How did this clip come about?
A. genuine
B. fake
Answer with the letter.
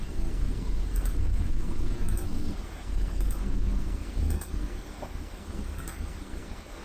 B